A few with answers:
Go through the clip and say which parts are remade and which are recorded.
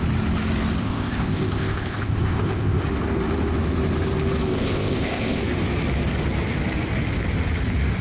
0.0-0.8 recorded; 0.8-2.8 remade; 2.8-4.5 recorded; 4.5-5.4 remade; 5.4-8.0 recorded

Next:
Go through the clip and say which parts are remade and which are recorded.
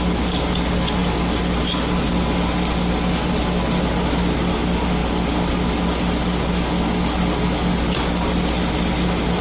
0.0-9.4 recorded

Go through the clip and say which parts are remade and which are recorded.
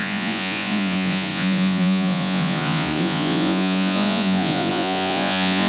0.0-5.7 remade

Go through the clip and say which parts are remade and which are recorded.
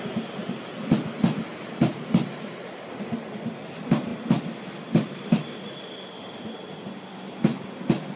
0.0-8.2 recorded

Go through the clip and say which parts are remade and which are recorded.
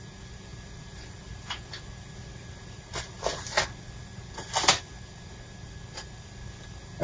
0.0-7.0 recorded